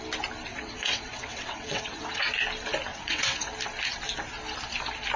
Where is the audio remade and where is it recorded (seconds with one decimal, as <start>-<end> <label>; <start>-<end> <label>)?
0.0-0.5 recorded; 0.5-2.2 remade; 2.2-2.9 recorded; 2.9-3.5 remade; 3.5-5.2 recorded